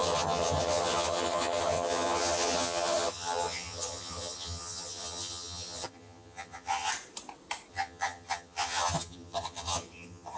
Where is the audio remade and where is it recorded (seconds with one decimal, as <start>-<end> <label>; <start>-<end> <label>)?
0.0-6.9 remade; 6.9-7.7 recorded; 7.7-10.4 remade